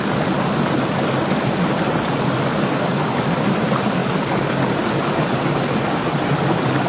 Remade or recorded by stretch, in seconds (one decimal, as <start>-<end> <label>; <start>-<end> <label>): 0.0-6.9 recorded